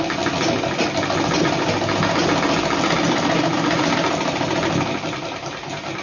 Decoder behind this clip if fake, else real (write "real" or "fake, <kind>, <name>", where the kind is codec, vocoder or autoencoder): real